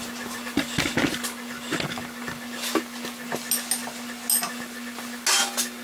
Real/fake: real